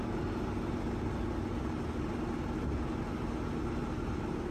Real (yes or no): yes